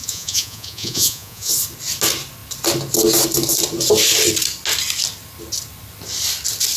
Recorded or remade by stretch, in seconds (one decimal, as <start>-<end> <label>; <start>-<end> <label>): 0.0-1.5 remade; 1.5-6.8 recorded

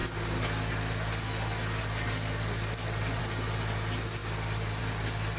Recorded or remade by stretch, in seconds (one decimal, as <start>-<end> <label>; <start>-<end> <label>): 0.0-5.4 recorded

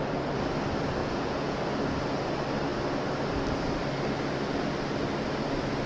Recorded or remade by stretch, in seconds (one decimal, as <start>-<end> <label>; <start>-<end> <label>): 0.0-1.0 recorded; 1.0-1.6 remade; 1.6-5.9 recorded

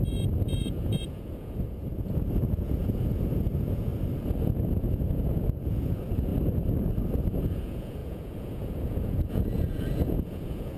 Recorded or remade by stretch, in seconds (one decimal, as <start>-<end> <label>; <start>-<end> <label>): 0.0-3.9 remade; 3.9-4.8 recorded; 4.8-6.3 remade; 6.3-7.4 recorded; 7.4-10.8 remade

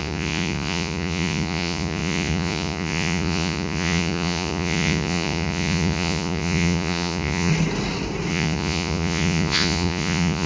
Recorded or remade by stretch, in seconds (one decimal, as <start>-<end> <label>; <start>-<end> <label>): 0.0-7.5 remade; 7.5-8.3 recorded; 8.3-10.5 remade